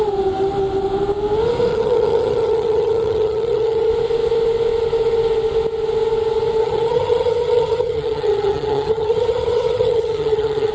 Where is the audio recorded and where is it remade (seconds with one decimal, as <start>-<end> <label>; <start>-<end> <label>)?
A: 0.0-1.7 recorded; 1.7-3.9 remade; 3.9-6.6 recorded; 6.6-10.7 remade